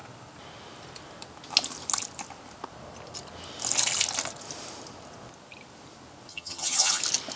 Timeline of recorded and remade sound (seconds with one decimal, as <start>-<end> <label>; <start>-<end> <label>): 0.0-6.3 recorded; 6.3-7.0 remade; 7.0-7.4 recorded